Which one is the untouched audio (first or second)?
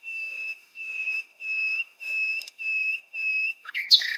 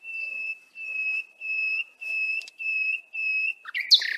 second